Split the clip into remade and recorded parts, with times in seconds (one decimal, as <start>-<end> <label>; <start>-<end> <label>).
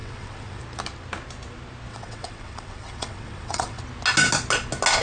0.0-0.6 remade; 0.6-1.9 recorded; 1.9-3.8 remade; 3.8-5.0 recorded